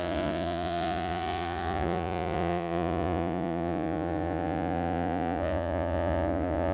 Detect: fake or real fake